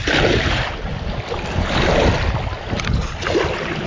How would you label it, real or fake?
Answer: real